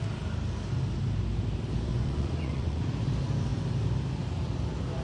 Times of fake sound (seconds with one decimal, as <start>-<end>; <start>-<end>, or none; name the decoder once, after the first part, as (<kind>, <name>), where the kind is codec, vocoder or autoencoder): 1.9-2.8 (vocoder, Vocos)